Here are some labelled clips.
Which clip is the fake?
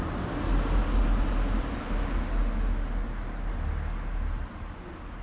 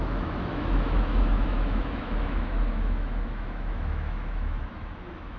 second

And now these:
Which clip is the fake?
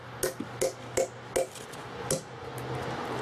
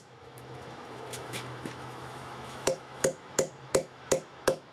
second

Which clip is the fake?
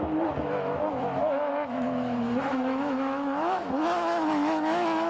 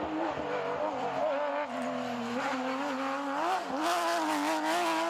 first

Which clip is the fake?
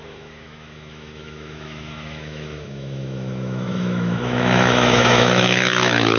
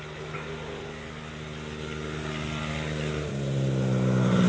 first